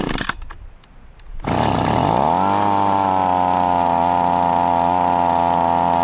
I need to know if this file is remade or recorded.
recorded